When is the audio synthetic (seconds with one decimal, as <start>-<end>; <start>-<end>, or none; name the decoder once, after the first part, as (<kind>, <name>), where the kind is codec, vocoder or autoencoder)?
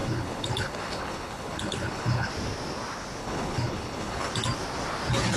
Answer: 0.0-2.3 (codec, HILCodec); 3.2-4.3